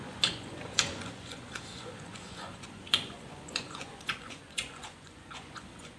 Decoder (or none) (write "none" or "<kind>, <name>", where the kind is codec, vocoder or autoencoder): vocoder, Vocos